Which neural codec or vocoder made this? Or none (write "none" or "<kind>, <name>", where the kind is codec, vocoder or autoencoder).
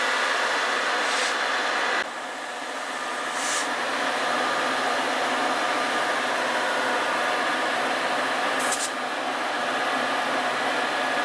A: none